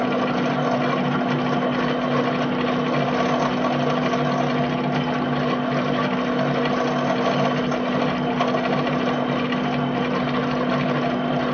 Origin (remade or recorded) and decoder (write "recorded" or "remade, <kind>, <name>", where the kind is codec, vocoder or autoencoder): recorded